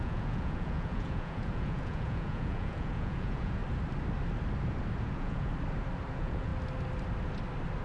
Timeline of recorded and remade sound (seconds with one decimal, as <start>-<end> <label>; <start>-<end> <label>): 0.0-3.6 remade; 3.6-5.0 recorded; 5.0-5.5 remade; 5.5-6.1 recorded; 6.1-6.5 remade; 6.5-7.8 recorded